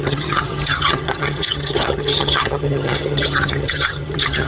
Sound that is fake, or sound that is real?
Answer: fake